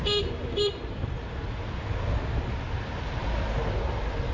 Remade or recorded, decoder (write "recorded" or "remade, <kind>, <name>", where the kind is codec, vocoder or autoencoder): recorded